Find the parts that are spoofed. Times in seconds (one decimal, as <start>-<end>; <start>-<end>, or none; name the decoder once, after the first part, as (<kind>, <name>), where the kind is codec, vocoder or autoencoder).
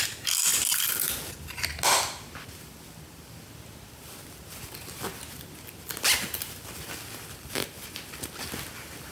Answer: none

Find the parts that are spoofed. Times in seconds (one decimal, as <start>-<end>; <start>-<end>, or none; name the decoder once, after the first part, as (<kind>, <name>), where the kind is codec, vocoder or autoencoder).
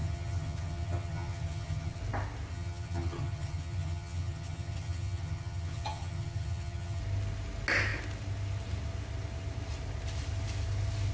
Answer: 0.0-2.0 (vocoder, HiFi-GAN); 2.5-7.0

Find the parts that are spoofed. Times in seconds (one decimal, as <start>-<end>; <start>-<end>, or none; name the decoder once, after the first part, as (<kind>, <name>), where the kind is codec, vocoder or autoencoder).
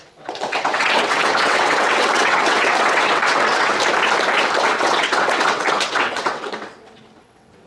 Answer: 0.0-3.7 (vocoder, WaveNeXt); 4.6-7.7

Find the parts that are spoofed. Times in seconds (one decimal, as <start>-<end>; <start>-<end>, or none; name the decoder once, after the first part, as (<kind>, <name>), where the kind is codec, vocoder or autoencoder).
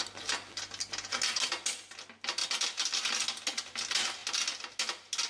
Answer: none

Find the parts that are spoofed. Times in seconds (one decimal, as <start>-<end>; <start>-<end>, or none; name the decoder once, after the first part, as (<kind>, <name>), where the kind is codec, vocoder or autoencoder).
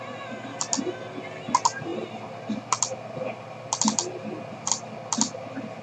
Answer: none